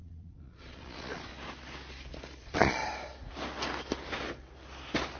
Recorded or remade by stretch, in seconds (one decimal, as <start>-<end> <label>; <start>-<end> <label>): 0.0-1.3 remade; 1.3-2.4 recorded; 2.4-2.8 remade; 2.8-5.2 recorded